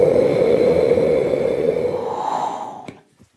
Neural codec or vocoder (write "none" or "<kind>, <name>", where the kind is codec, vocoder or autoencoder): vocoder, Vocos